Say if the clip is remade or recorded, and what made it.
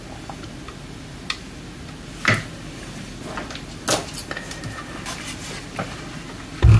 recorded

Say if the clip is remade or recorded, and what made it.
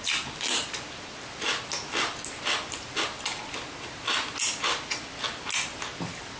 recorded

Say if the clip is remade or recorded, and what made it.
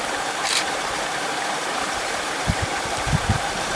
remade, vocoder, BigVGAN v2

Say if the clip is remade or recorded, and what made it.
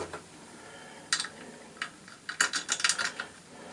recorded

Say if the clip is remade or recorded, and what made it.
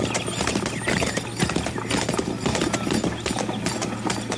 recorded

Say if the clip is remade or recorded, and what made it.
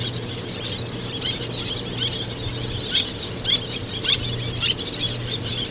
recorded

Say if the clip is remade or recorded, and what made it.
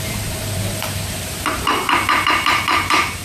remade, vocoder, BigVGAN v2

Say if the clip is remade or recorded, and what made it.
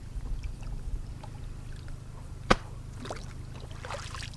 remade, vocoder, BigVGAN v2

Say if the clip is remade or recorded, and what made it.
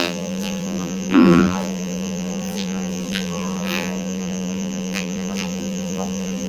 remade, vocoder, BigVGAN v2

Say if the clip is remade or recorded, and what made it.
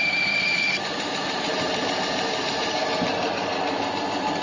remade, vocoder, BigVGAN v2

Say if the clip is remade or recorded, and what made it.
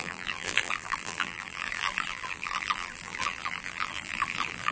remade, vocoder, BigVGAN v2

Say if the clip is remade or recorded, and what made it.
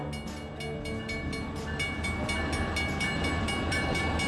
recorded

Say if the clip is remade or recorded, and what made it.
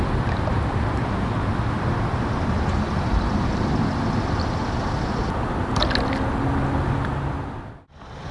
recorded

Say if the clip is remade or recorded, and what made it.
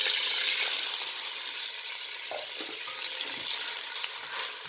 recorded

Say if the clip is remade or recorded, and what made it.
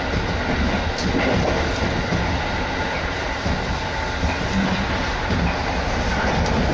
recorded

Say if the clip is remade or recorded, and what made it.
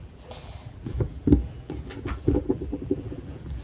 remade, vocoder, BigVGAN v2